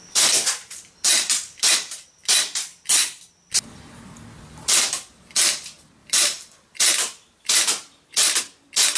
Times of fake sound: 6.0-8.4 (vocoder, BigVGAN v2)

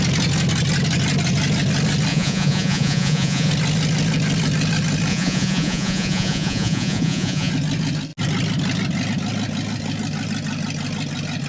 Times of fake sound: 2.1-3.5 (vocoder, Vocos); 5.1-7.5

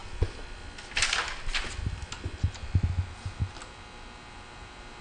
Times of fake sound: none

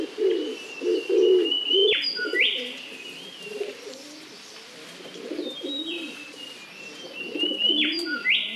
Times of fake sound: none

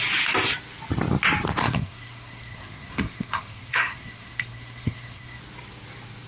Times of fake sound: 1.6-5.4 (codec, SNAC)